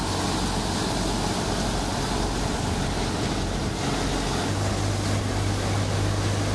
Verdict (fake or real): real